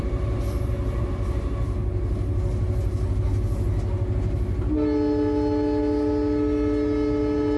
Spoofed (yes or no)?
no